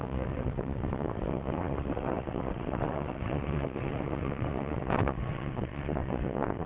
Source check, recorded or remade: remade